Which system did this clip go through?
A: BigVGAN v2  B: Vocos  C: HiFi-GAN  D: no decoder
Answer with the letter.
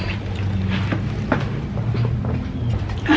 D